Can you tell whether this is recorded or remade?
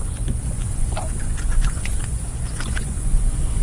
remade